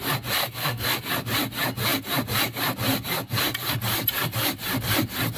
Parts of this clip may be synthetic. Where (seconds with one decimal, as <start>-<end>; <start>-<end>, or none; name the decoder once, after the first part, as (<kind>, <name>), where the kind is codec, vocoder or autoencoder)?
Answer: 0.4-1.0 (codec, SNAC)